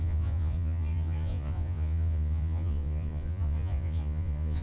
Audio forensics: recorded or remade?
remade